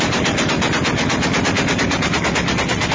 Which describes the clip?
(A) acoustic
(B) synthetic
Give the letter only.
A